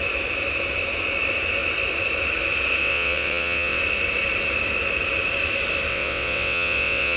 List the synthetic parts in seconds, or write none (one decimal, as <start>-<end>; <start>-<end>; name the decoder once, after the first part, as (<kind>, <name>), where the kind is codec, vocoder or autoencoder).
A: 2.8-3.8 (vocoder, WaveNeXt); 5.9-7.2